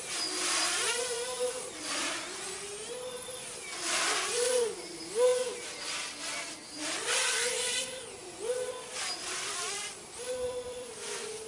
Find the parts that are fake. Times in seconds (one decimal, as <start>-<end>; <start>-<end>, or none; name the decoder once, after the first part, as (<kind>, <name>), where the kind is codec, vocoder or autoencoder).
0.0-11.5 (vocoder, BigVGAN v2)